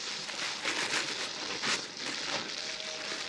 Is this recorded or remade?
recorded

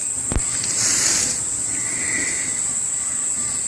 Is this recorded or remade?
recorded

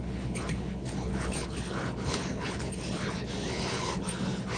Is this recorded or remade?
remade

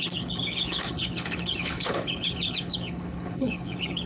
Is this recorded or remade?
remade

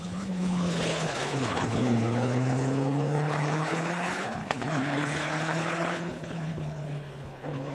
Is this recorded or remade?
remade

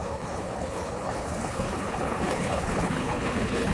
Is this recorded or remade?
remade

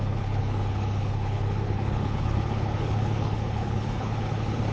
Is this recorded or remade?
remade